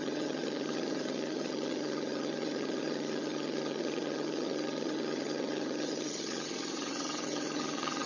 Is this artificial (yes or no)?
yes